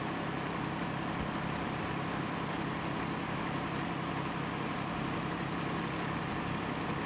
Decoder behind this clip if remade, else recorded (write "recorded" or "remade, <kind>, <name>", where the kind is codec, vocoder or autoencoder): recorded